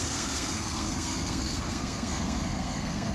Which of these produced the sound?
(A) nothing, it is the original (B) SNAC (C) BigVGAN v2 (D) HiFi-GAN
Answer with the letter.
B